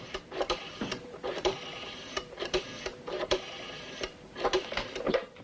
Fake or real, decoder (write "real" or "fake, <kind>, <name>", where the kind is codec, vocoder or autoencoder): fake, vocoder, BigVGAN v2